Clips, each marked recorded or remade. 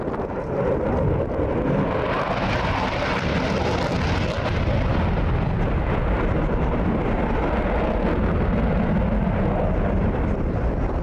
recorded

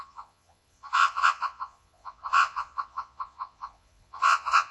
remade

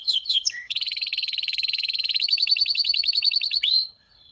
remade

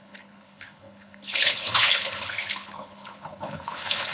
remade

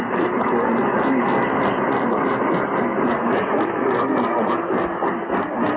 recorded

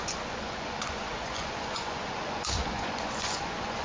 remade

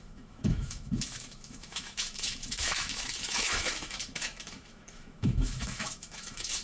remade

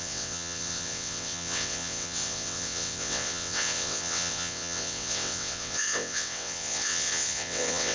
remade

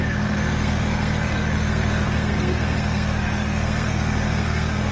remade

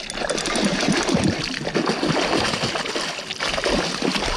recorded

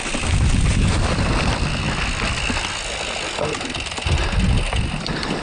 recorded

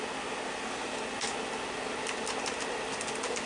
recorded